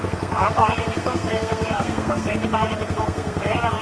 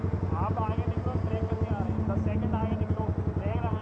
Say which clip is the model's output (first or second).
first